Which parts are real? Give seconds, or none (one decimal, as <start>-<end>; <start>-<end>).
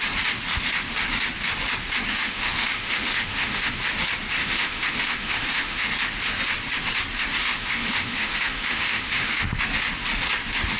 0.0-2.1; 3.7-4.4; 5.9-7.4; 9.6-10.8